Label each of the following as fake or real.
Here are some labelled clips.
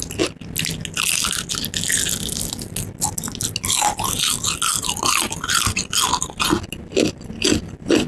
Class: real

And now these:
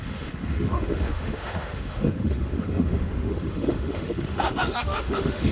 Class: fake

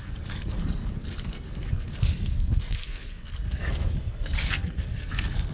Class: fake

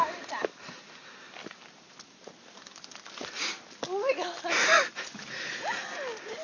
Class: real